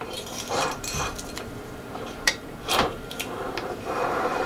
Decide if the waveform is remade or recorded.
remade